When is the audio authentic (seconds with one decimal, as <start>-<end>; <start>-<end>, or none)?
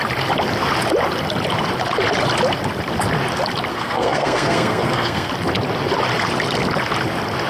0.0-3.7; 5.3-7.5